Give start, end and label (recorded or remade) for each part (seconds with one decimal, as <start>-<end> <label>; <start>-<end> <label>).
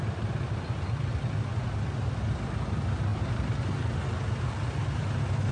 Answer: 0.0-5.5 recorded